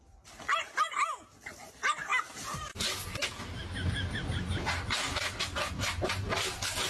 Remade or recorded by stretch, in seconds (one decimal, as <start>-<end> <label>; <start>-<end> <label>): 0.0-6.9 recorded